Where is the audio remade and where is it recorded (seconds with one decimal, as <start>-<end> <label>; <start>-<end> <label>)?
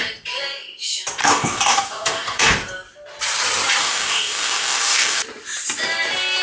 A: 0.0-1.2 recorded; 1.2-2.5 remade; 2.5-3.8 recorded; 3.8-5.2 remade; 5.2-6.4 recorded